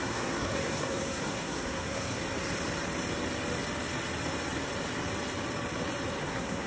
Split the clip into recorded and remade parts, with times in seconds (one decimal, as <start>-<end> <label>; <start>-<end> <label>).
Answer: 0.0-2.2 remade; 2.2-6.2 recorded; 6.2-6.7 remade